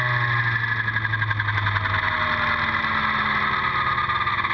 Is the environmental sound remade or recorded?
recorded